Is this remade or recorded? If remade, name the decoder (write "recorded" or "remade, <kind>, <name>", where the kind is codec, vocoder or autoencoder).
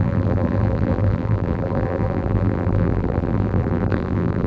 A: remade, vocoder, BigVGAN v2